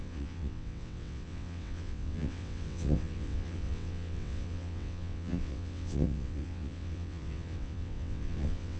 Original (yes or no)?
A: no